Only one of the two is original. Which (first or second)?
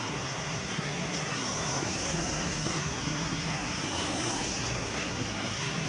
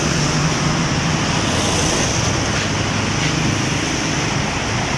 second